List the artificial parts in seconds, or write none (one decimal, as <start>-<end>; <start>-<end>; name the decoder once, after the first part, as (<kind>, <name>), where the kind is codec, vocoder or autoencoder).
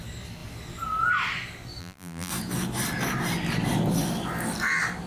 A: 1.8-2.3 (vocoder, BigVGAN v2)